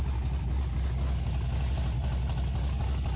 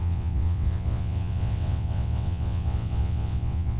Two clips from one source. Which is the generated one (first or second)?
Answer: second